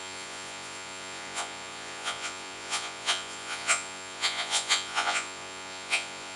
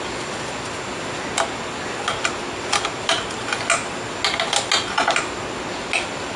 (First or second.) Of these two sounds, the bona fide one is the second